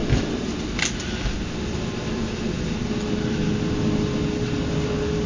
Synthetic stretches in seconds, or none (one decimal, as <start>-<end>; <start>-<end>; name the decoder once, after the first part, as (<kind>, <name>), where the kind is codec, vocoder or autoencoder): none